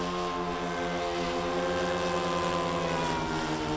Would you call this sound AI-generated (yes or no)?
no